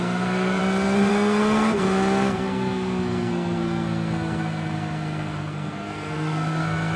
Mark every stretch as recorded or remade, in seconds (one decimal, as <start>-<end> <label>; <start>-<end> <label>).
0.0-0.6 remade; 0.6-1.1 recorded; 1.1-7.0 remade